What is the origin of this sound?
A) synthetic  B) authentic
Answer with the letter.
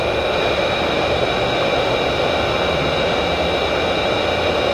B